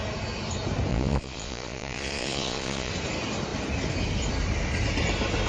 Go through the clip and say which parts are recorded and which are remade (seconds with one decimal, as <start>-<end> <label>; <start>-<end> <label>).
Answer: 0.0-0.9 recorded; 0.9-2.9 remade; 2.9-5.5 recorded